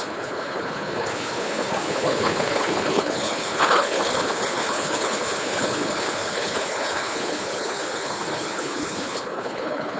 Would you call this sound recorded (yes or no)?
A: no